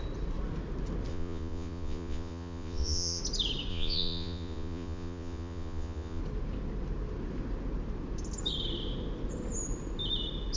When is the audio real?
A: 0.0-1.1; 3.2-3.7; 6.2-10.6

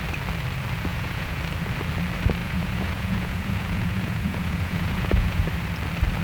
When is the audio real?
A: 0.0-0.9; 1.4-2.4; 5.5-6.2

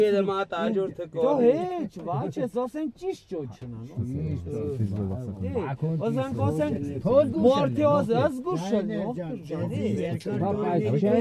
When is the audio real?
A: 0.0-11.2

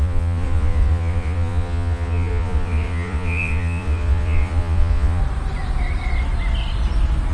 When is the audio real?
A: 5.2-7.3

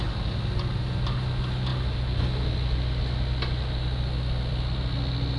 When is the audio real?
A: 0.0-5.4

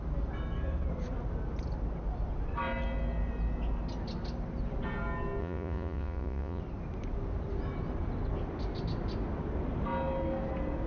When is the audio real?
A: 0.0-5.4; 6.6-10.9

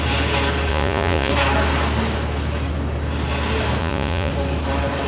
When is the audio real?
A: 0.0-0.7; 1.3-3.8; 4.3-5.1

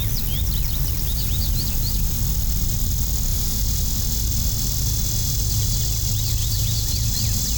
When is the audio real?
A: 0.0-1.1; 2.2-3.3; 4.0-5.2; 5.8-6.4; 7.1-7.6